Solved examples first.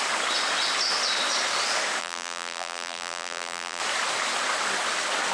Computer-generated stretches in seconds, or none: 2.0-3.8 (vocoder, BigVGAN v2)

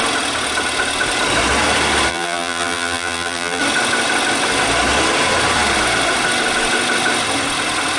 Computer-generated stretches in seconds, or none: 2.1-3.6 (vocoder, BigVGAN v2)

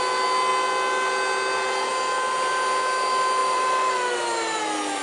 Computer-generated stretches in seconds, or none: 3.4-4.6 (vocoder, BigVGAN v2)

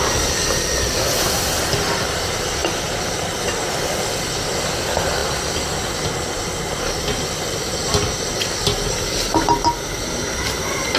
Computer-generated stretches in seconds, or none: 2.6-3.4 (vocoder, BigVGAN v2)

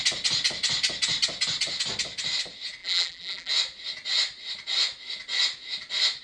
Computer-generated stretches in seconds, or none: 2.8-3.5 (vocoder, BigVGAN v2)

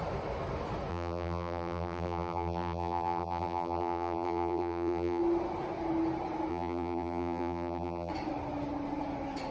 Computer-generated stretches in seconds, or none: 0.9-5.2 (vocoder, BigVGAN v2); 6.5-8.1

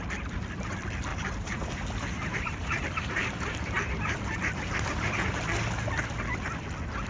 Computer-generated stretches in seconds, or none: 1.1-5.4 (vocoder, BigVGAN v2)